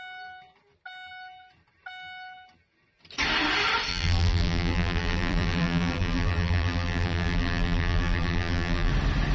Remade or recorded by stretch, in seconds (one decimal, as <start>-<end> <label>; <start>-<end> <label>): 0.0-3.9 recorded; 3.9-8.9 remade; 8.9-9.3 recorded